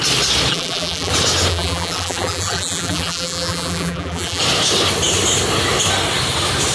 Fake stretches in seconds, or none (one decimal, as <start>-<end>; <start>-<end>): 0.5-1.1; 1.5-4.4